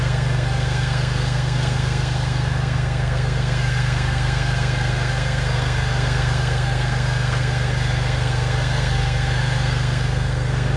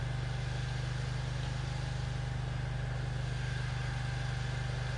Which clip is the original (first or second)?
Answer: second